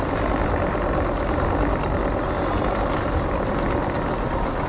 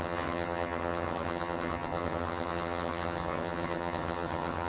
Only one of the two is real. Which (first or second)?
first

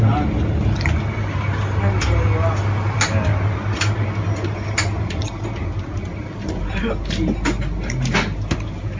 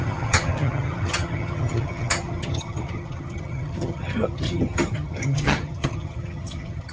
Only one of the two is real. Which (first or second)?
first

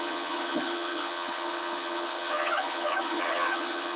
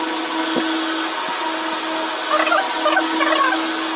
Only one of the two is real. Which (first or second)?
second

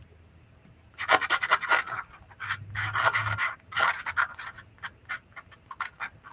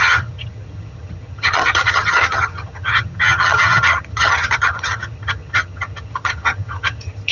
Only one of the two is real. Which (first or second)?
first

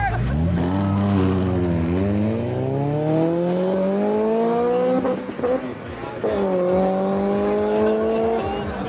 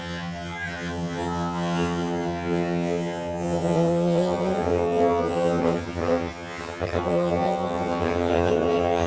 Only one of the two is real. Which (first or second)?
first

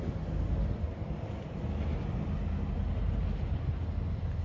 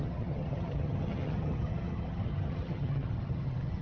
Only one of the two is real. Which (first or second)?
first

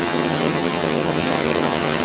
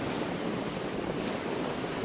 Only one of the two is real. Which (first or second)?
second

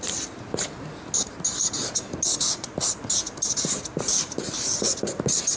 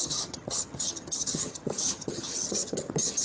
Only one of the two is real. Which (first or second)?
first